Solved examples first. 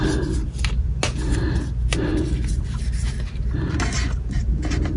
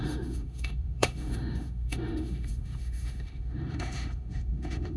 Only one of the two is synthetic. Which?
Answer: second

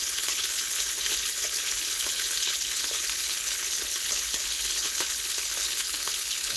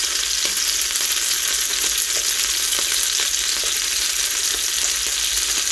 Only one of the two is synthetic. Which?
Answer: first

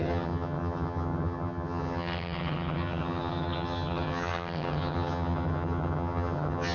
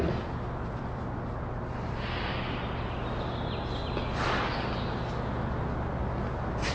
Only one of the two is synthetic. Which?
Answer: first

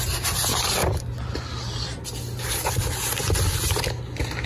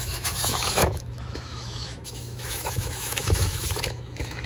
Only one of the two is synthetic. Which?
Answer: second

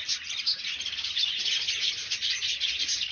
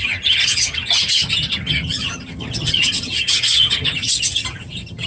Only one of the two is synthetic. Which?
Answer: second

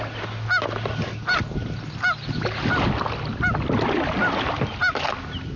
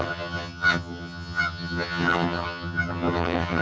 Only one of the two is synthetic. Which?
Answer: second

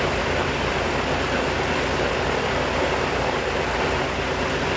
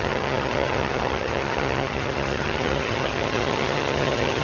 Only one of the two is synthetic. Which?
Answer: second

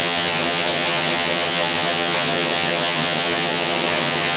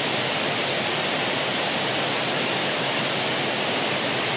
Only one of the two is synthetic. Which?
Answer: first